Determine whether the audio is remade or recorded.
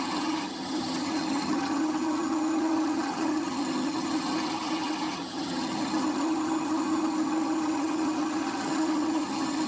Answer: remade